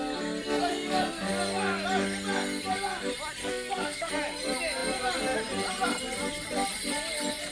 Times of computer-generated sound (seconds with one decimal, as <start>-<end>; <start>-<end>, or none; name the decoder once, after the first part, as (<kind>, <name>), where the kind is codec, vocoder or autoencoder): 0.7-1.3 (codec, SNAC); 3.4-4.1